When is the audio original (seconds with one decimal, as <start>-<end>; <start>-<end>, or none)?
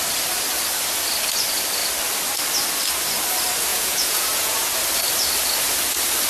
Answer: 0.0-3.7; 4.7-6.3